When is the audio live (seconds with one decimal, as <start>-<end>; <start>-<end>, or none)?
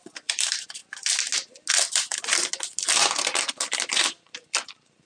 0.8-1.7; 2.1-3.9